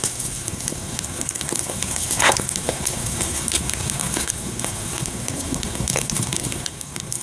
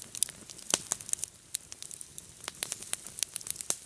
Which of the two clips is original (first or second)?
second